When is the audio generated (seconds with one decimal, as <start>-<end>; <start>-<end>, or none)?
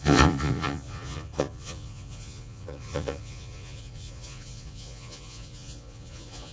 0.0-6.5